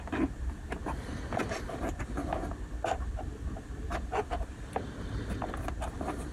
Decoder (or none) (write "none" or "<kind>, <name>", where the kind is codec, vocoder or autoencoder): vocoder, BigVGAN v2